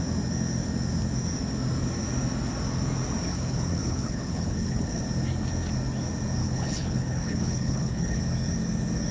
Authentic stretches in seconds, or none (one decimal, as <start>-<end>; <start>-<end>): 0.0-3.3; 5.0-6.4; 8.2-9.1